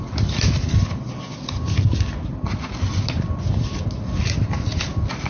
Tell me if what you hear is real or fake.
real